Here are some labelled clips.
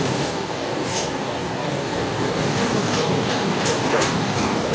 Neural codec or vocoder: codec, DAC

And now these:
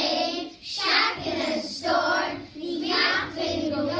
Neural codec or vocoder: none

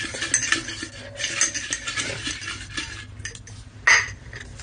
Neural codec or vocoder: none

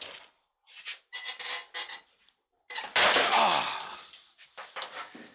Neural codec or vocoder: none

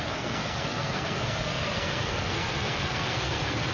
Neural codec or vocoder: codec, SNAC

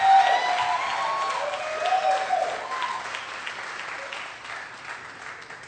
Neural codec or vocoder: none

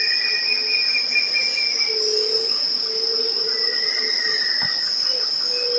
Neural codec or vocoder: none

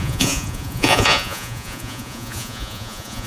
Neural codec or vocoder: vocoder, Vocos